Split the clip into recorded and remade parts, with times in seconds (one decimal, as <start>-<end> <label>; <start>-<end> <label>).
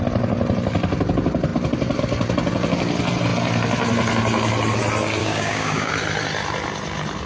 0.0-5.2 recorded; 5.2-5.9 remade; 5.9-7.3 recorded